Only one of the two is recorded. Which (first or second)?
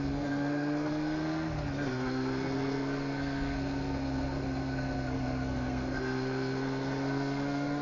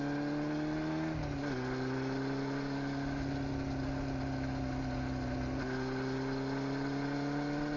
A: second